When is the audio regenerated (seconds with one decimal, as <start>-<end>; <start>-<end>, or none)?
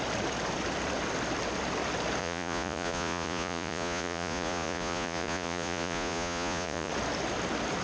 2.2-6.9